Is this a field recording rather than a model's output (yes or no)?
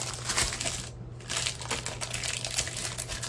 yes